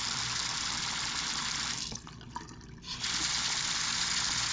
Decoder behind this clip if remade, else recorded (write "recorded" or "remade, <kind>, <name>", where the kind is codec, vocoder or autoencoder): recorded